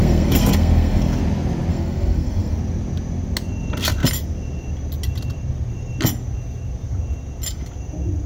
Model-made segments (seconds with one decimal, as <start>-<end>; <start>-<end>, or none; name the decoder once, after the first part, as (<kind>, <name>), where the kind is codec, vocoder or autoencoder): 0.0-1.2 (codec, SNAC); 1.7-2.6